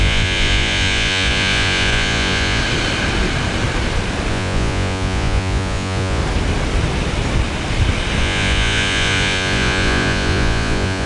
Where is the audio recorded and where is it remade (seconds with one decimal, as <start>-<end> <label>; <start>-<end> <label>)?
0.0-2.6 remade; 2.6-4.3 recorded; 4.3-6.2 remade; 6.2-8.2 recorded; 8.2-11.1 remade